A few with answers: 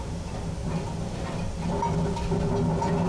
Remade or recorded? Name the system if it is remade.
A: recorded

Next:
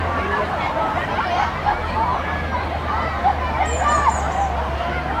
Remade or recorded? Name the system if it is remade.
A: recorded